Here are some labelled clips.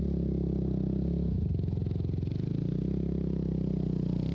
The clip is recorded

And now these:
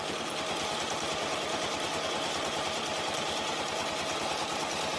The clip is remade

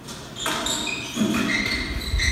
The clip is recorded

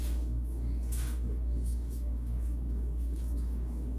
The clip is remade